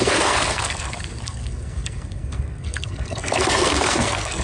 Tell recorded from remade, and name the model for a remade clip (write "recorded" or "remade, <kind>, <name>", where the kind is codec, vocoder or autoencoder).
remade, codec, SNAC